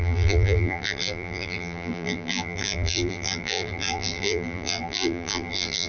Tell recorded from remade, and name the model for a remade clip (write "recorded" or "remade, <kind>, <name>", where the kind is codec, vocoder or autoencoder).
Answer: remade, vocoder, BigVGAN v2